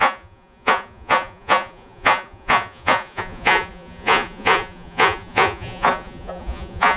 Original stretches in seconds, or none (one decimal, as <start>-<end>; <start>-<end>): none